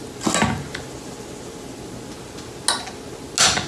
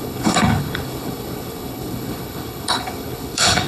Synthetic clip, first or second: second